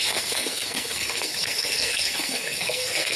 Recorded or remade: remade